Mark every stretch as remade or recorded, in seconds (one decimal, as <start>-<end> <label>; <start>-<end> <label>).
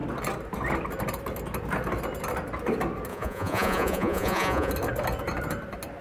0.0-3.1 recorded; 3.1-4.7 remade; 4.7-6.0 recorded